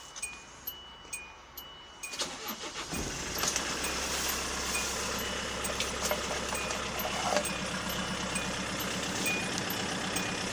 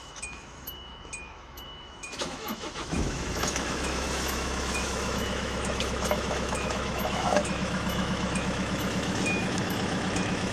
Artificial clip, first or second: second